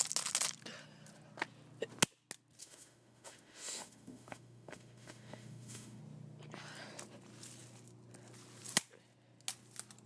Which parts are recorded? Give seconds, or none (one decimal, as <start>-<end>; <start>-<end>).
0.0-2.6; 6.0-10.1

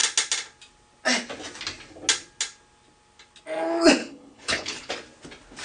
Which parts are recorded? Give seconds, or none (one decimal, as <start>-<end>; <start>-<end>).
0.0-4.0; 4.9-5.6

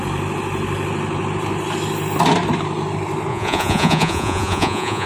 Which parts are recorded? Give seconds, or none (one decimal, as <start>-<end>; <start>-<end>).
0.0-3.3

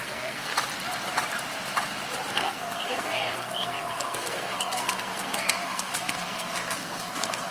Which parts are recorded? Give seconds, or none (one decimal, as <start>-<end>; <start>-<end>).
0.5-2.3

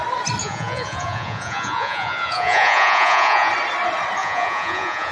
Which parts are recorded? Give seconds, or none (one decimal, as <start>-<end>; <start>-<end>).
0.0-0.4; 3.5-4.2

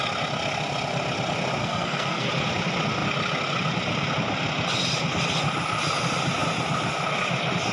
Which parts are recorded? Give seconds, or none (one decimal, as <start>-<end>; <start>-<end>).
0.0-1.6; 2.3-7.7